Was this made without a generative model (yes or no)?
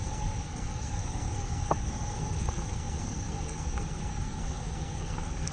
no